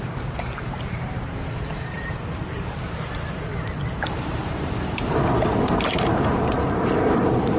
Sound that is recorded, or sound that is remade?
remade